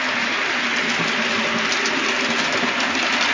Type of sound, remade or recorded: recorded